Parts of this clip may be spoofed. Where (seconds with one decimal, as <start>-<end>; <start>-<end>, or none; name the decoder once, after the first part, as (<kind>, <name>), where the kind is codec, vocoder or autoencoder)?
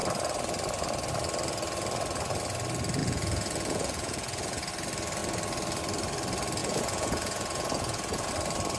3.0-4.7 (vocoder, Vocos); 6.6-8.3